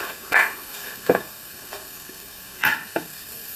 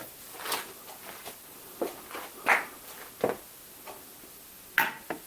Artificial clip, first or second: first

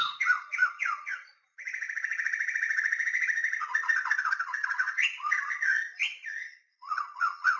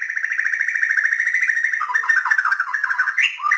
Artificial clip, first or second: first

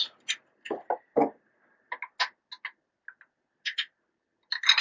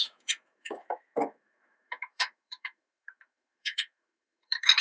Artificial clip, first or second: second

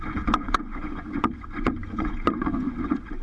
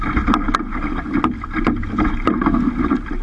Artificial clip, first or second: first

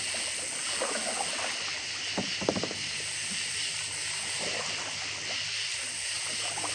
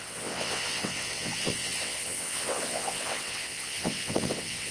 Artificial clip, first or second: second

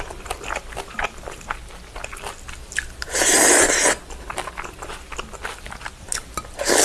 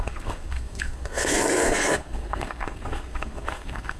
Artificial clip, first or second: second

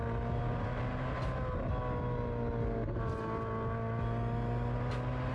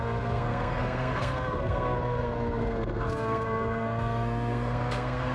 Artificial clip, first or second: second